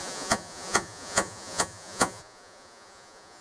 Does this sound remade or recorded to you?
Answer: remade